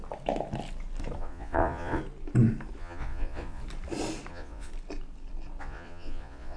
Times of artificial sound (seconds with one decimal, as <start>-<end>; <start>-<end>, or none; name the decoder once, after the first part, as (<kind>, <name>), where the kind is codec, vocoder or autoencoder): 1.2-2.0 (vocoder, Vocos); 2.8-3.6; 4.3-4.7; 5.6-6.6